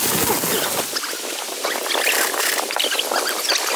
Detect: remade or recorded recorded